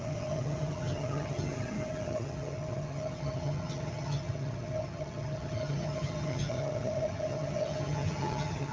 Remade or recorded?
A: remade